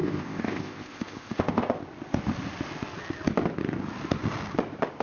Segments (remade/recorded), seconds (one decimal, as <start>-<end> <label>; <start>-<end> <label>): 0.0-1.8 remade; 1.8-5.0 recorded